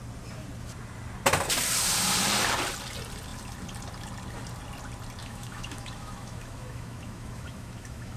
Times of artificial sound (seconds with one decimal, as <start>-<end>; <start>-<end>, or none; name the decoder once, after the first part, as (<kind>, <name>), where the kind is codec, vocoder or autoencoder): 5.2-8.2 (autoencoder, DAC-VAE)